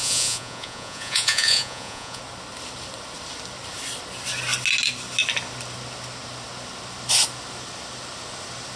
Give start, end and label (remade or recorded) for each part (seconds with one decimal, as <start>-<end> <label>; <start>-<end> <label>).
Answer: 0.0-2.2 remade; 2.2-8.8 recorded